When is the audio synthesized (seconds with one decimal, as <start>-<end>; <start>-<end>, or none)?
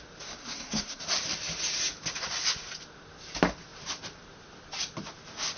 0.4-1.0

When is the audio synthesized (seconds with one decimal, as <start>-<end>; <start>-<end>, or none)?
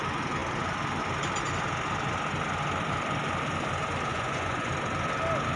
4.1-4.7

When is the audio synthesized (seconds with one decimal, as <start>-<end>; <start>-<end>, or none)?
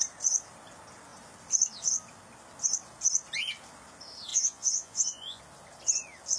4.3-5.4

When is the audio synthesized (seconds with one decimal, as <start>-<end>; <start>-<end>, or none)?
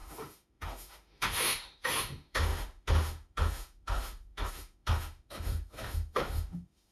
0.0-6.9